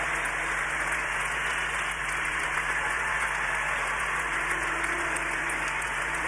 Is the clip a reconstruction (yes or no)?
yes